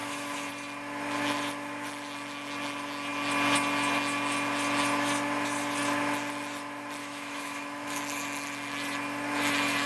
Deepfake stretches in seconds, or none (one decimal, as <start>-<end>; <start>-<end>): 0.0-0.5; 7.0-8.0